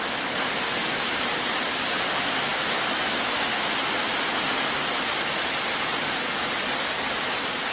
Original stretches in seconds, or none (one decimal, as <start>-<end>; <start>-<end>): 0.0-7.7